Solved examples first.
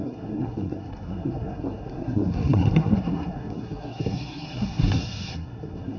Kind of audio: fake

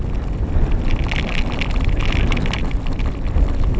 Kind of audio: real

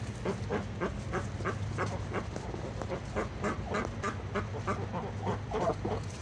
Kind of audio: real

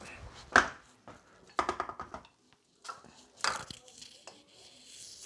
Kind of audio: real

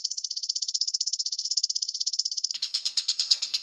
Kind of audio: fake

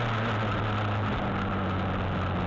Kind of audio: real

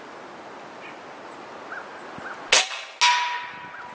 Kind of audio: real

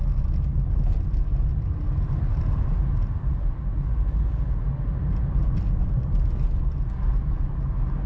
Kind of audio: real